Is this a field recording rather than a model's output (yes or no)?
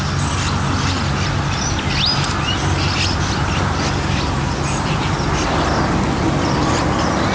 yes